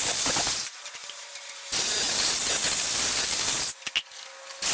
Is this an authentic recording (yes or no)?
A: yes